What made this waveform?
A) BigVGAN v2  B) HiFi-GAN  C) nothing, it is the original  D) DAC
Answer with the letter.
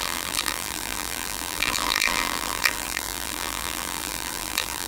A